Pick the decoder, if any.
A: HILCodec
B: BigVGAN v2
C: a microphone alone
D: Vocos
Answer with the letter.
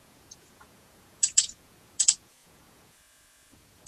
D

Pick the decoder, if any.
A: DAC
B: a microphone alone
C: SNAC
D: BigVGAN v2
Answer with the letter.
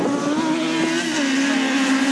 B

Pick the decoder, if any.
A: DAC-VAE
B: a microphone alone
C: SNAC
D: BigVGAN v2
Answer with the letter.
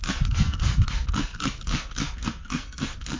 C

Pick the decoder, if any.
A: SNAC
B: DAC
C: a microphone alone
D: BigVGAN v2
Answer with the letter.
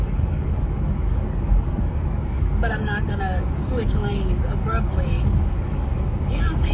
B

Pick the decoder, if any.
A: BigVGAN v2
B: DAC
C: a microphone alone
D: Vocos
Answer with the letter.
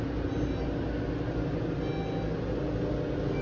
C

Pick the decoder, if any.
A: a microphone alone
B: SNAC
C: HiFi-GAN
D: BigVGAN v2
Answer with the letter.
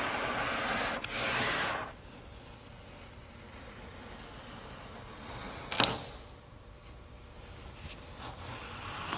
A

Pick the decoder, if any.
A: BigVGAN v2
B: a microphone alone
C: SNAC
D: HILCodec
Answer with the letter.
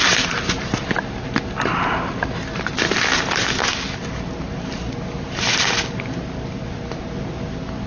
B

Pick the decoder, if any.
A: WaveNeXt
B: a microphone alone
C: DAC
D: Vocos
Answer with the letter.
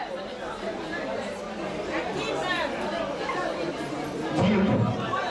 B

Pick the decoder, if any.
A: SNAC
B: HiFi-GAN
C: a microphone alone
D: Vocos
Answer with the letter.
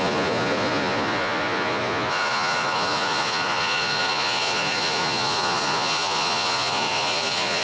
D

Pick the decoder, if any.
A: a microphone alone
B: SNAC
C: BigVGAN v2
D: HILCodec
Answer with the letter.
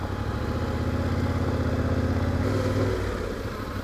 A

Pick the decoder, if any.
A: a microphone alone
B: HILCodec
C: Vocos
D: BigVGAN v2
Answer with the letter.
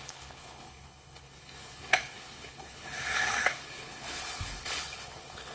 B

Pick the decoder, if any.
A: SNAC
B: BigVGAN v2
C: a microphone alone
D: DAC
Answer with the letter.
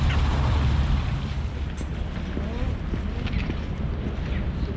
C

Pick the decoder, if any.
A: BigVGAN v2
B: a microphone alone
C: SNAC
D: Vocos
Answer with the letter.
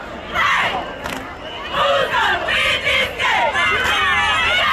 B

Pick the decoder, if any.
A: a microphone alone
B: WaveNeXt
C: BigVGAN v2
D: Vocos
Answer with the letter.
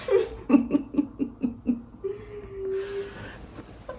A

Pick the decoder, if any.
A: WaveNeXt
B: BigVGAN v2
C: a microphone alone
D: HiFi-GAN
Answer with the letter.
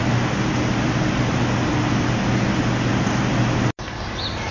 C